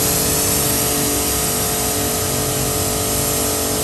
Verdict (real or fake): real